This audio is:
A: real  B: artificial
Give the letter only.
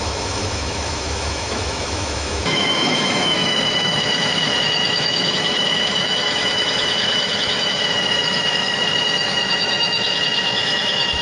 B